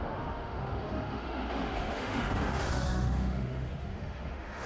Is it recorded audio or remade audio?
remade